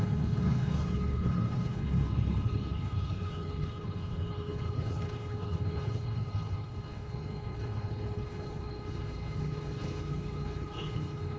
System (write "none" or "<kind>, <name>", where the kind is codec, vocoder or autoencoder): codec, HILCodec